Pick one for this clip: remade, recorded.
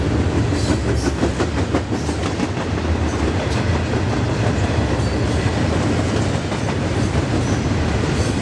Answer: recorded